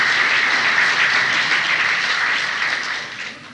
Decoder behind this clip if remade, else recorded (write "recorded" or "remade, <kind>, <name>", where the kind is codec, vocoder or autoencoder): recorded